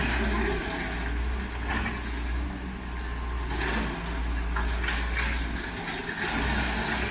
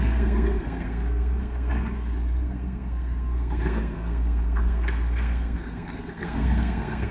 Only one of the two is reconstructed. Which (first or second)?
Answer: second